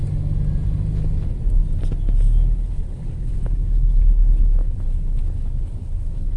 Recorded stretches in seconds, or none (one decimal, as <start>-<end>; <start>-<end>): 0.0-2.6